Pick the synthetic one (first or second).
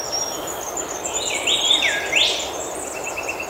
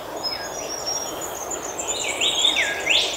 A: first